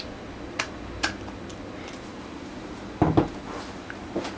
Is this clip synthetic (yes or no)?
no